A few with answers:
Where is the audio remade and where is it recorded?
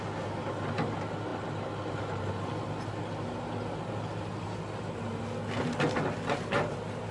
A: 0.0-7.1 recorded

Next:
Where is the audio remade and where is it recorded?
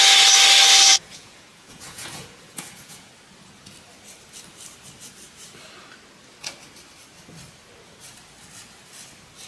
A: 0.0-0.9 recorded; 0.9-3.1 remade; 3.1-9.5 recorded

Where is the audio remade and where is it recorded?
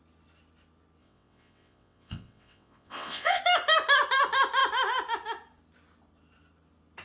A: 0.0-1.0 recorded; 1.0-3.4 remade; 3.4-7.0 recorded